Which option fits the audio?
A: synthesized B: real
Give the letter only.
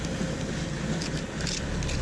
B